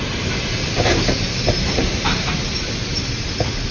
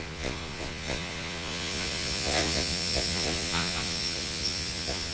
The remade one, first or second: second